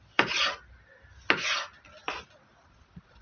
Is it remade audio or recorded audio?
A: recorded